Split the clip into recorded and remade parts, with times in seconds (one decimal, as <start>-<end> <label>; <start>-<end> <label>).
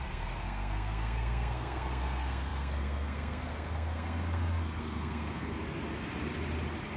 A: 0.0-5.6 remade; 5.6-7.0 recorded